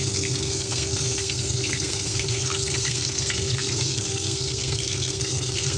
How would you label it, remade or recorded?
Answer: remade